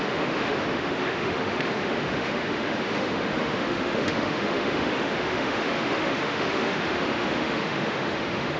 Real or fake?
fake